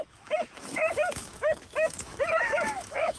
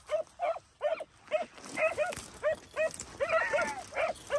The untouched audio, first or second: second